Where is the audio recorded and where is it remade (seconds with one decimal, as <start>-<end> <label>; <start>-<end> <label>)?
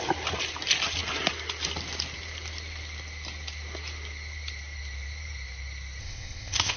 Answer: 0.0-6.0 recorded; 6.0-6.8 remade